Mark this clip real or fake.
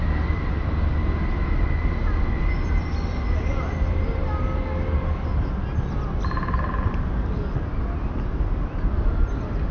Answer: real